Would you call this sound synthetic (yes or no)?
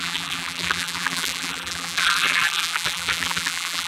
yes